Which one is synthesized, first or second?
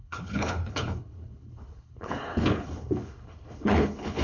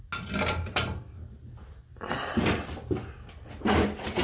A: first